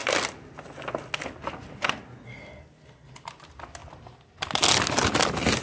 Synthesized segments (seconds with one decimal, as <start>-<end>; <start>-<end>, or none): none